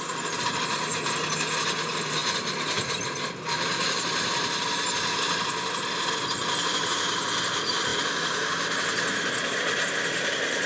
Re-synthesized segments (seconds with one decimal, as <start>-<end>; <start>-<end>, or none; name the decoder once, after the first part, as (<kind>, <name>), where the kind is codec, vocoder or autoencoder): none